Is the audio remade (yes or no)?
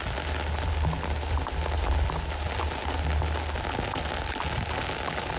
no